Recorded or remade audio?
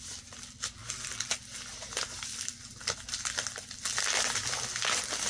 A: recorded